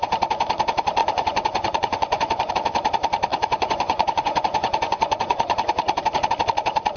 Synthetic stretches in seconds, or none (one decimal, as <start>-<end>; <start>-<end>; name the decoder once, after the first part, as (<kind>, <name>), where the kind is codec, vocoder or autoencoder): 1.0-2.5 (vocoder, Vocos); 3.3-6.0